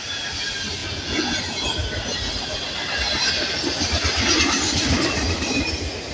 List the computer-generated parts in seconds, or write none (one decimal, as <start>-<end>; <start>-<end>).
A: 0.8-1.4